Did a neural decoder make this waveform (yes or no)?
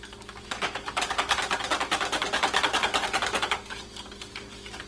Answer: no